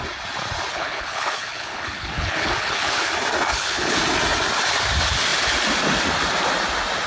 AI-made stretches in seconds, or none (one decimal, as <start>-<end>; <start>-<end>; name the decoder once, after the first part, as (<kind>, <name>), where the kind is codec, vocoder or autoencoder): 0.7-3.1 (codec, HILCodec); 3.5-4.0